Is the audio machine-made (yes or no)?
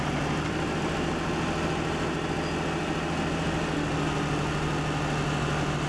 no